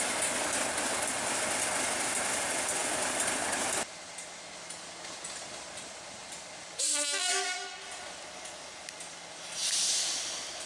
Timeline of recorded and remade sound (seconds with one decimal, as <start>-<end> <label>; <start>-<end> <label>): 0.0-10.7 recorded